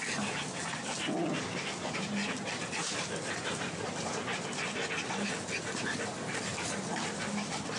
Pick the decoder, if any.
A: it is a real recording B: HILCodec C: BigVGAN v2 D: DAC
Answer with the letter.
A